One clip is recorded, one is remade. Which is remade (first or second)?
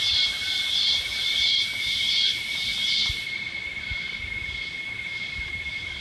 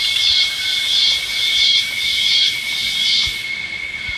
first